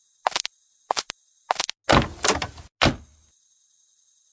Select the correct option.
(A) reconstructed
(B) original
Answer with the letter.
B